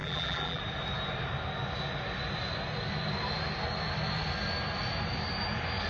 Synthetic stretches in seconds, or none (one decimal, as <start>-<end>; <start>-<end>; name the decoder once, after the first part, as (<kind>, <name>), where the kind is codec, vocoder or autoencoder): 0.0-0.6 (vocoder, BigVGAN v2)